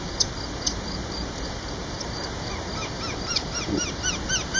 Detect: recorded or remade recorded